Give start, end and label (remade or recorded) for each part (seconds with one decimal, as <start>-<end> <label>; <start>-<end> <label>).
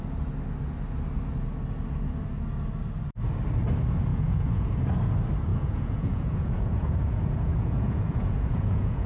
0.0-4.1 recorded; 4.1-4.7 remade; 4.7-5.5 recorded; 5.5-9.1 remade